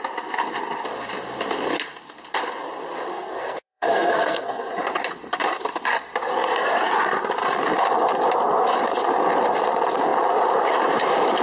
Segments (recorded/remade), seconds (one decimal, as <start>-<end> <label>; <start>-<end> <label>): 0.0-3.1 recorded; 3.1-4.7 remade; 4.7-11.4 recorded